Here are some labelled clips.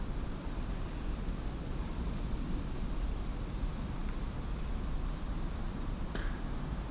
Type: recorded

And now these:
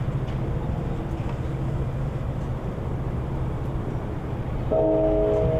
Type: recorded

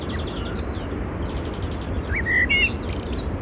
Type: recorded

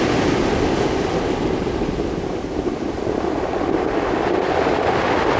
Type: remade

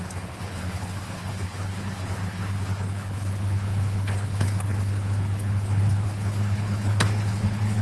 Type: remade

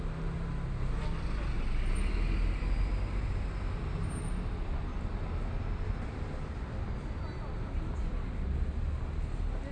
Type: recorded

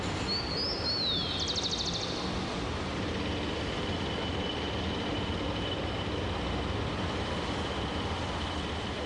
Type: recorded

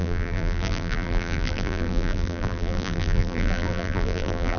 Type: remade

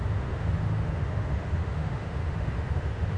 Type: remade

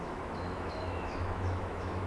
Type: remade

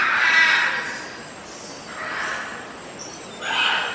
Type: recorded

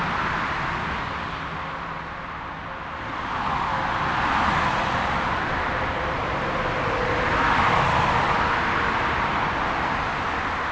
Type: recorded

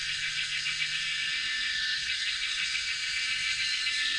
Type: remade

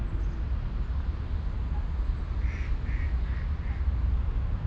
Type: recorded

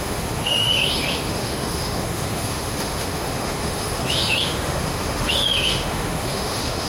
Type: remade